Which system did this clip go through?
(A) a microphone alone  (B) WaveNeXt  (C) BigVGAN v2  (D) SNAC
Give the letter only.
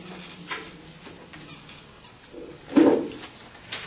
A